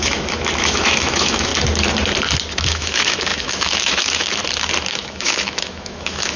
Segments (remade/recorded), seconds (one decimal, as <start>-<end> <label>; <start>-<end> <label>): 0.0-1.5 remade; 1.5-2.6 recorded; 2.6-4.4 remade; 4.4-4.9 recorded; 4.9-6.4 remade

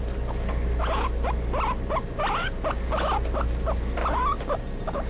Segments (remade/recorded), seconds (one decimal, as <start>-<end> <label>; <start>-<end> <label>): 0.0-5.1 recorded

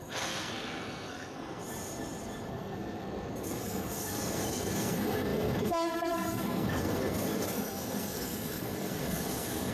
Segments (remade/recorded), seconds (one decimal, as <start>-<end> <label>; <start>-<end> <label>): 0.0-1.6 remade; 1.6-2.5 recorded; 2.5-9.7 remade